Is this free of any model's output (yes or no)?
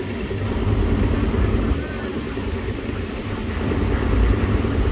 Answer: yes